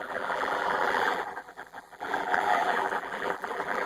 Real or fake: fake